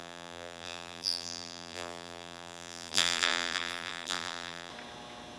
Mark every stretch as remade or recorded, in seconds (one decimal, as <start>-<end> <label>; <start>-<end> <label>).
0.0-4.7 remade; 4.7-5.4 recorded